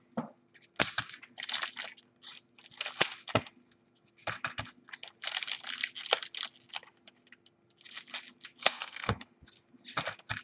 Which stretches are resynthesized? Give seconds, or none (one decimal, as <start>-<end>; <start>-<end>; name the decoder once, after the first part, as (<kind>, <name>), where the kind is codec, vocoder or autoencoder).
8.6-9.1 (codec, SNAC)

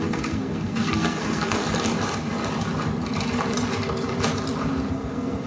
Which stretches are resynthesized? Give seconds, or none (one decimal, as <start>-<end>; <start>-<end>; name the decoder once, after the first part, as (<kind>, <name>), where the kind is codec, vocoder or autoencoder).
0.0-1.6 (codec, SNAC); 4.9-5.5

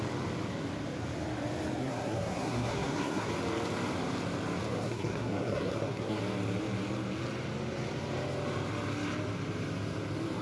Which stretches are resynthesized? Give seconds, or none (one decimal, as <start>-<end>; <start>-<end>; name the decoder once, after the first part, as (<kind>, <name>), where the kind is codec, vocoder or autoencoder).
1.8-3.3 (codec, SNAC); 4.7-6.2

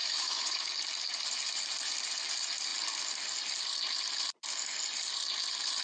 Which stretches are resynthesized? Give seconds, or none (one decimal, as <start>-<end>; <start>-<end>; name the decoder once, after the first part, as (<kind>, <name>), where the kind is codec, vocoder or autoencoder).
0.0-0.7 (autoencoder, DAC-VAE)

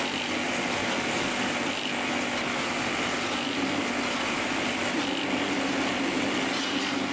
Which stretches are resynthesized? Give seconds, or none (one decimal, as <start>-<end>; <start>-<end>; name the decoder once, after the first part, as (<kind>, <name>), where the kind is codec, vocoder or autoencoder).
0.8-1.5 (codec, DAC)

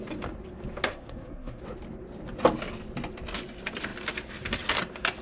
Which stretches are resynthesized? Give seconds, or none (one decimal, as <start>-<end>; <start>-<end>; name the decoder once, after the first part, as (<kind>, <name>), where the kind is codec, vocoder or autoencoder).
0.9-1.6 (codec, SNAC)

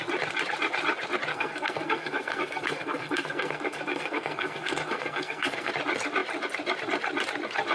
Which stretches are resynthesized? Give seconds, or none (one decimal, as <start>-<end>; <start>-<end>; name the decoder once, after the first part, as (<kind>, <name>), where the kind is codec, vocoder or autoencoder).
1.3-5.7 (codec, SNAC)

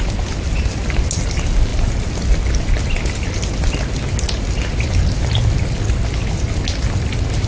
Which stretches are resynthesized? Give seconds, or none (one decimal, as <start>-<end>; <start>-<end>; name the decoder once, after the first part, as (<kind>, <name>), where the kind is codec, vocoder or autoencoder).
none